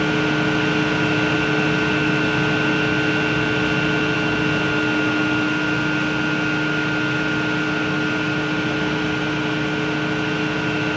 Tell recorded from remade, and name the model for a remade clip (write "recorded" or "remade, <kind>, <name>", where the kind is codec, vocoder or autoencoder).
recorded